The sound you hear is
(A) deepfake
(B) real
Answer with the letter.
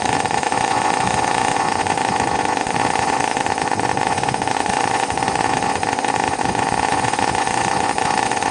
A